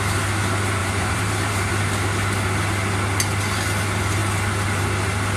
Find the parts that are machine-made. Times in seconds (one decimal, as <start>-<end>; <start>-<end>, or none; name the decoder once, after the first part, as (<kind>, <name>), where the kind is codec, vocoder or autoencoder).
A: 0.8-1.7 (vocoder, BigVGAN v2)